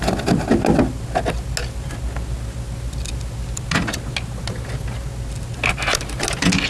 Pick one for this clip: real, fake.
real